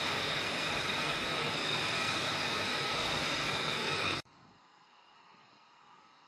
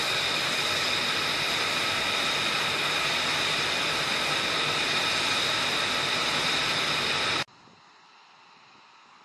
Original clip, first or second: second